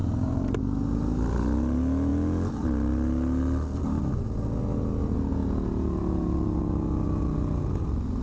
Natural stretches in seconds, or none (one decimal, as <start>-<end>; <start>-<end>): 0.6-8.2